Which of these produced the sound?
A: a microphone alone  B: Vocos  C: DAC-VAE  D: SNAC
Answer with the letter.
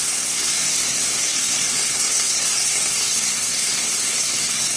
D